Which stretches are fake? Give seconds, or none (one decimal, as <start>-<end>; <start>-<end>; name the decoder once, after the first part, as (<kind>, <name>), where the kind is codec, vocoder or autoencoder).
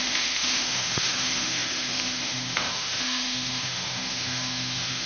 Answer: 0.0-5.1 (autoencoder, DAC-VAE)